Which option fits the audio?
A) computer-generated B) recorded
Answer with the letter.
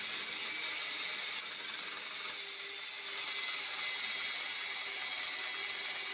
B